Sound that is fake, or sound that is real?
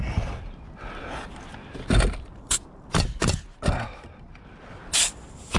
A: real